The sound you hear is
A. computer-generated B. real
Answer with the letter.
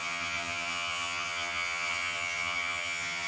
A